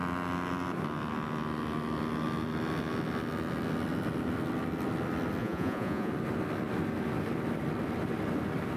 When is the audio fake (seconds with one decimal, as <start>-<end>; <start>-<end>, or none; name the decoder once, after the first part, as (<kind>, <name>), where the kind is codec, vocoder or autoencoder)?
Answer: 5.4-6.1 (vocoder, Vocos)